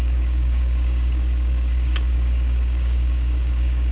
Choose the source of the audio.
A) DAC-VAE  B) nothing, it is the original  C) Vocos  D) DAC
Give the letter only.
D